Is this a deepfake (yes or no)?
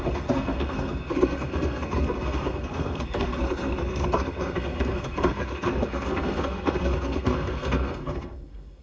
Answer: yes